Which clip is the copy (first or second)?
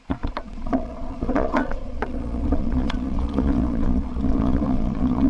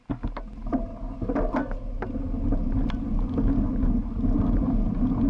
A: first